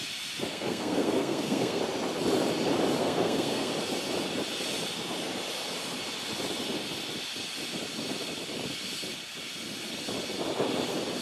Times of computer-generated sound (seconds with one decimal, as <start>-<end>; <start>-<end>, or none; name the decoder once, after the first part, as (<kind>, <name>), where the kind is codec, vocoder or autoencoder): 0.5-1.8 (codec, SNAC); 3.0-3.7